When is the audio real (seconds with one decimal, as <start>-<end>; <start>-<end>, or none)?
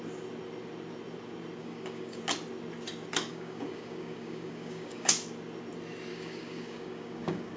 0.0-1.6; 2.2-3.3; 5.1-6.1